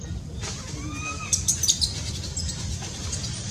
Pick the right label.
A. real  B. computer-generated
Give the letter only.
B